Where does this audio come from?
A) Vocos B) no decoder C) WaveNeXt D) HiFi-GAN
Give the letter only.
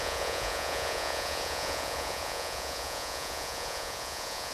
A